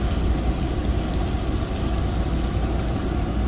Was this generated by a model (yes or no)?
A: no